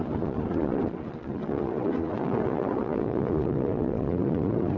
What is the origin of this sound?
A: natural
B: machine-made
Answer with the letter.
B